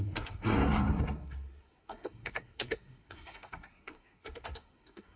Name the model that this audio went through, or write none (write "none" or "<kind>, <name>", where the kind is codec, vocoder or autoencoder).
codec, SNAC